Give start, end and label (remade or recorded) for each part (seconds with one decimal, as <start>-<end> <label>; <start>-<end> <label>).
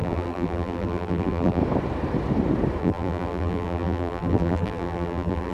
0.0-1.6 remade; 1.6-2.8 recorded; 2.8-5.5 remade